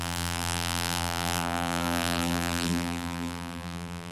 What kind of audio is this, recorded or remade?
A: remade